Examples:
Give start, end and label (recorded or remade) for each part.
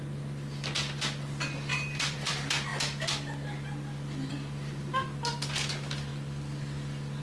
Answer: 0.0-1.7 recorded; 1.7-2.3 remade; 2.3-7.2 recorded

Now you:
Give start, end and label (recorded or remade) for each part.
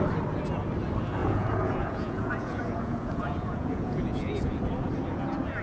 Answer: 0.0-1.2 recorded; 1.2-4.6 remade; 4.6-5.6 recorded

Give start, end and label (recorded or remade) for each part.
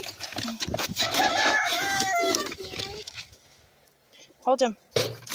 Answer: 0.0-0.5 recorded; 0.5-3.6 remade; 3.6-5.3 recorded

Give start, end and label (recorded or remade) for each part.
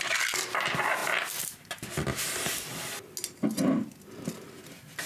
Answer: 0.0-5.1 recorded